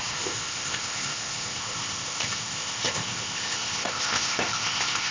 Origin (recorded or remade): remade